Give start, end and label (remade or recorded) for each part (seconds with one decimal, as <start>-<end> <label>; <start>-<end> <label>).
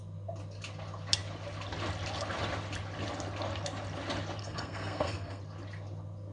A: 0.0-4.4 recorded; 4.4-5.4 remade; 5.4-6.3 recorded